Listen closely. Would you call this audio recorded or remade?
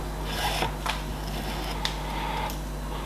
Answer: recorded